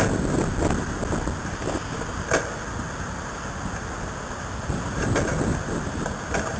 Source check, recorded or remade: recorded